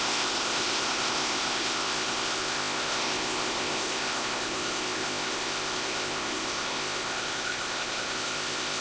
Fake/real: fake